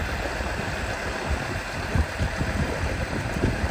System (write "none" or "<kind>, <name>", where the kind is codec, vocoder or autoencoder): none